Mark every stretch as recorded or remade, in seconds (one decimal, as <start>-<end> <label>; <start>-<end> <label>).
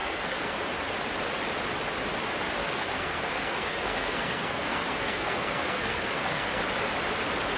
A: 0.0-0.6 remade; 0.6-2.6 recorded; 2.6-6.6 remade; 6.6-7.6 recorded